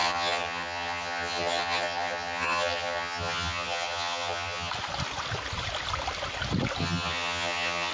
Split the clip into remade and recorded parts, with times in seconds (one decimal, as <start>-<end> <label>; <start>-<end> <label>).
0.0-4.7 remade; 4.7-6.8 recorded; 6.8-7.9 remade